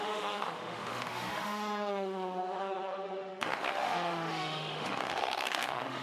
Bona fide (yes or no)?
no